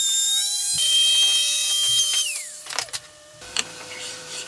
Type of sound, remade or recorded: remade